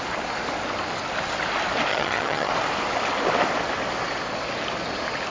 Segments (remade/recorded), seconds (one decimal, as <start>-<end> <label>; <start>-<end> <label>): 0.0-1.9 recorded; 1.9-2.5 remade; 2.5-5.3 recorded